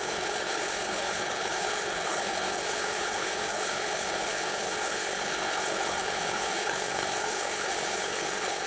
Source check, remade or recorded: remade